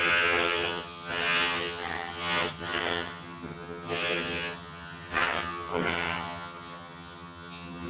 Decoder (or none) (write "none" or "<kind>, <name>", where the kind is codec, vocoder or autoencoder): vocoder, HiFi-GAN